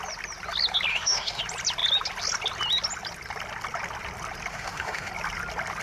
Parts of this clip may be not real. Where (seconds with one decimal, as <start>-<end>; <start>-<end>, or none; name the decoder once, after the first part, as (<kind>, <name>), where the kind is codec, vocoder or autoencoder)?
0.9-1.4 (autoencoder, DAC-VAE); 4.5-5.1